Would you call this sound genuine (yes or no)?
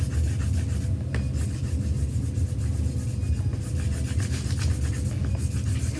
yes